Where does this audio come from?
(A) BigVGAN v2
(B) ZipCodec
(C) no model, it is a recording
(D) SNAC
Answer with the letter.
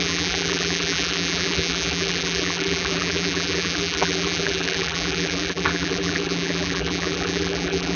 A